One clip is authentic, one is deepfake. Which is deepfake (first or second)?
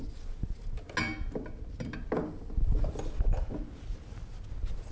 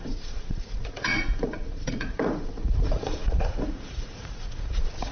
second